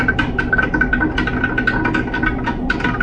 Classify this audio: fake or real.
real